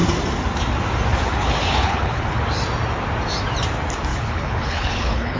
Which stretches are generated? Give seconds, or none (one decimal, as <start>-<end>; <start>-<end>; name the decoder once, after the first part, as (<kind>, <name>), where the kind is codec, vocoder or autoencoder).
1.1-2.4 (codec, HILCodec); 4.1-5.4